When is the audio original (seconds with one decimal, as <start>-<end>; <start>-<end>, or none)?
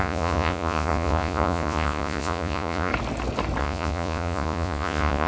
2.9-3.6